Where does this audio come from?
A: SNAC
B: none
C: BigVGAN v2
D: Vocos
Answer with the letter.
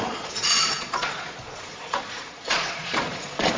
D